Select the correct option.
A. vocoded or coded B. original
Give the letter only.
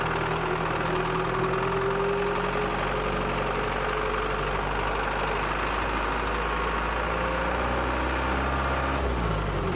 B